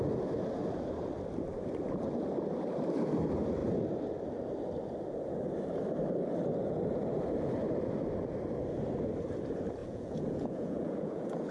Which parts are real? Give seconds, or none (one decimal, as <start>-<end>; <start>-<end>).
0.0-9.8